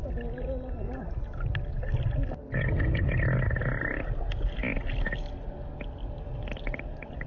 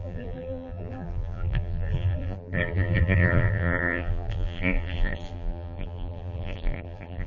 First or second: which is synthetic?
second